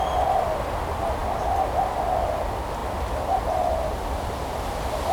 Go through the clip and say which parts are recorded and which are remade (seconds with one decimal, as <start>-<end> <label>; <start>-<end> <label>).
0.0-5.1 recorded